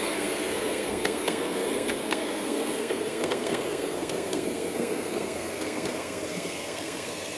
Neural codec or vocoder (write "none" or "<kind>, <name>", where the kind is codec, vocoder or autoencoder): codec, SNAC